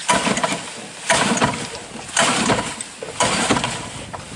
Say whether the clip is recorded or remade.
recorded